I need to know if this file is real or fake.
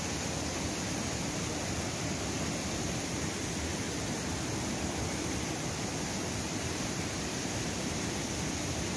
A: real